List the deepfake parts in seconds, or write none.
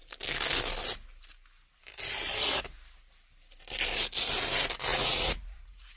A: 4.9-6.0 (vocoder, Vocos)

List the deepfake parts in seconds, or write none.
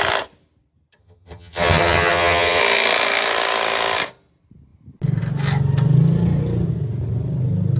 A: 1.0-2.6 (vocoder, HiFi-GAN)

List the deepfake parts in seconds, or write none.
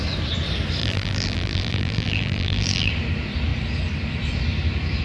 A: 0.8-2.9 (vocoder, BigVGAN v2)